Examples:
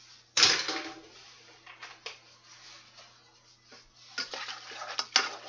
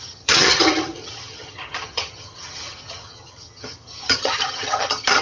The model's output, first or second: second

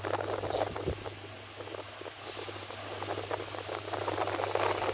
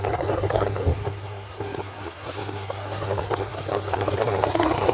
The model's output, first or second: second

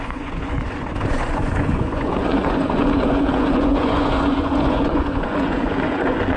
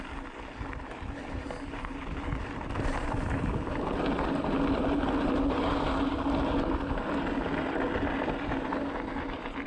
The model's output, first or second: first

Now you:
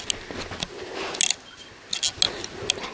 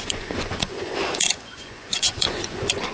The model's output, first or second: second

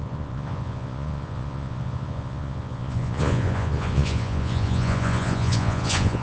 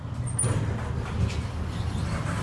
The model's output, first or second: first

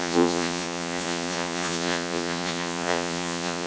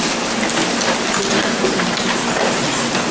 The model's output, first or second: first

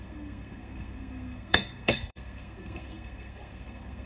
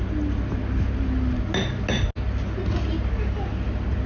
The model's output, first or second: first